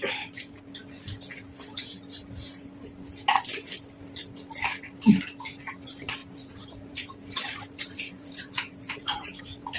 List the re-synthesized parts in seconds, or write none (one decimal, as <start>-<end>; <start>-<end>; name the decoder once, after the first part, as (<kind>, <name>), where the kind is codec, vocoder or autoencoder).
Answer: 6.2-9.4 (vocoder, BigVGAN v2)